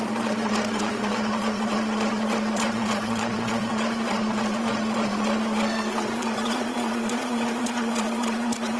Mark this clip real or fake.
fake